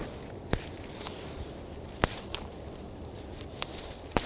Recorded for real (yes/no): no